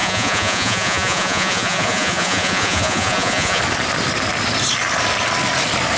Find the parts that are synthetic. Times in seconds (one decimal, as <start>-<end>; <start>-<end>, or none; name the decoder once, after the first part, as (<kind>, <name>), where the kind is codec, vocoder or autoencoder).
0.0-3.6 (vocoder, Vocos)